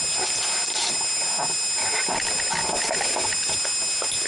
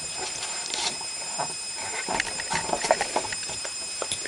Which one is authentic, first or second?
first